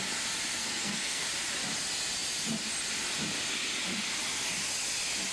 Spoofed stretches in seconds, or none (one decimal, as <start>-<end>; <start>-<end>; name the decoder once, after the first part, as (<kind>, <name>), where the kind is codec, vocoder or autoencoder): 0.6-1.3 (codec, SNAC)